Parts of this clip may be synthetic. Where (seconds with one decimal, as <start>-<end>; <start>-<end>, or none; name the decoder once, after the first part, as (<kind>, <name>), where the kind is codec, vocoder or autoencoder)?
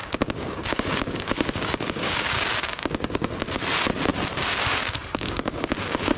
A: 0.0-2.8 (codec, DAC); 4.3-6.2